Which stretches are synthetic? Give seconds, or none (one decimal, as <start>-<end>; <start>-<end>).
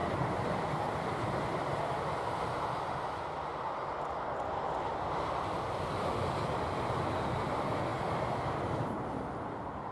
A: none